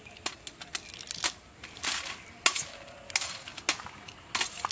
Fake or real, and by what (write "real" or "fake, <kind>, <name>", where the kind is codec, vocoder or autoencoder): real